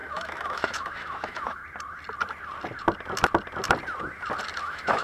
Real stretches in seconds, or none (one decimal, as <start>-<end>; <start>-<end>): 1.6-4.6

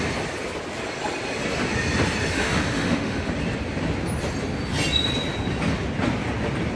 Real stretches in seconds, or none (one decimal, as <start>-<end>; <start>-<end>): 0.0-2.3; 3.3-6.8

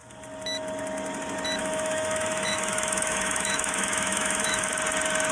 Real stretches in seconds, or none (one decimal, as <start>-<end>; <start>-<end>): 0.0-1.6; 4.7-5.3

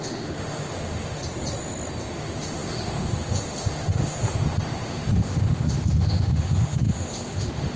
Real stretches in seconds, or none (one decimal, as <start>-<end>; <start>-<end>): 1.2-2.1

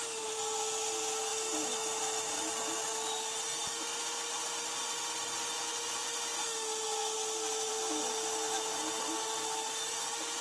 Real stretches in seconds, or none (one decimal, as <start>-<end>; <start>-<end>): 0.0-10.4

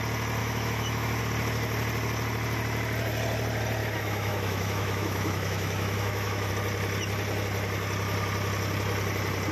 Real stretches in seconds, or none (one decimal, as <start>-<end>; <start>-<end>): 0.0-0.4; 1.2-3.8; 6.5-9.5